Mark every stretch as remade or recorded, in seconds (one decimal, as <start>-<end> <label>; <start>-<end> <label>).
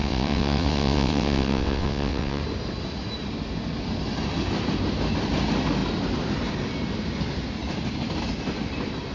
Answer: 0.0-2.4 remade; 2.4-9.1 recorded